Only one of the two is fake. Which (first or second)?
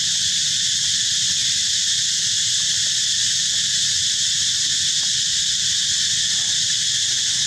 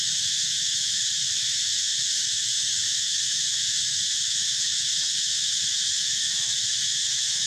second